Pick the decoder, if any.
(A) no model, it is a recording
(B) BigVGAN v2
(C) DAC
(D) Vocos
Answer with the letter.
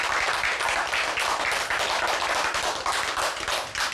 A